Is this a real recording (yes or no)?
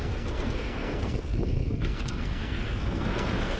no